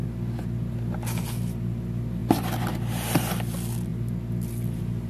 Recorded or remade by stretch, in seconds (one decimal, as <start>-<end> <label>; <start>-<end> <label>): 0.0-2.2 recorded; 2.2-3.3 remade; 3.3-5.1 recorded